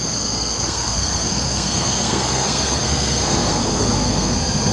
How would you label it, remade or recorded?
remade